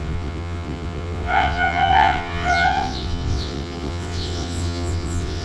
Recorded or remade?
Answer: remade